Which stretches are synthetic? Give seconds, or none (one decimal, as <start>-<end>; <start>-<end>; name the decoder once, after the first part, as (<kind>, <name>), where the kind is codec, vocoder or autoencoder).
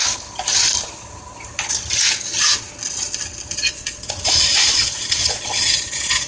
3.5-6.3 (vocoder, Vocos)